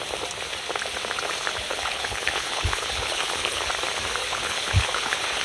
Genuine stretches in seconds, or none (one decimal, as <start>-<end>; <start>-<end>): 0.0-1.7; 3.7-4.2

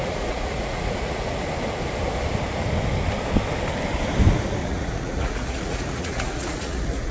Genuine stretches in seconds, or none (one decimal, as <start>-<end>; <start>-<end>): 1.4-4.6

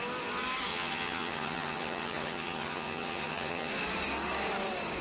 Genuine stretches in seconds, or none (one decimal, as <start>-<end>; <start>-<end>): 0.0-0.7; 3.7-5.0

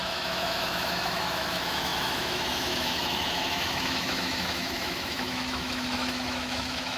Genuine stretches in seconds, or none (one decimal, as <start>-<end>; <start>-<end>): none